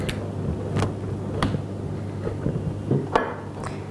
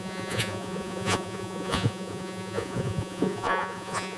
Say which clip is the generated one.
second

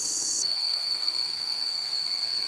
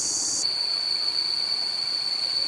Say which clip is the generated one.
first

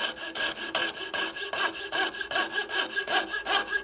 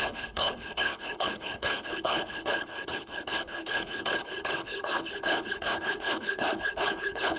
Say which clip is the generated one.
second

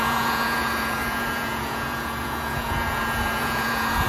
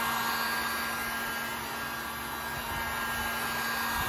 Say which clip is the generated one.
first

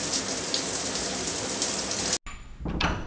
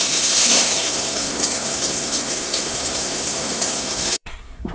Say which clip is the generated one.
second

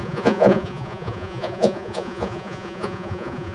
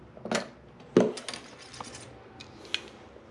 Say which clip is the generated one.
first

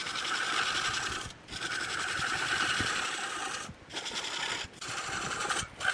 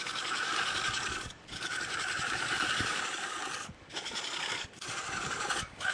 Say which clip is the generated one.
second